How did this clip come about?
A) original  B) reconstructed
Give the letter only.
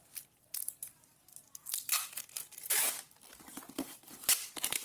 A